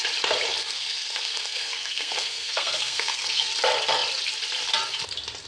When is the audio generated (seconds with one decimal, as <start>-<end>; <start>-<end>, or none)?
0.6-3.5